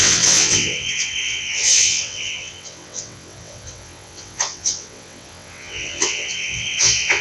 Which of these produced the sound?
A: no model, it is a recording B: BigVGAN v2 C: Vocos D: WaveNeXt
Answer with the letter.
D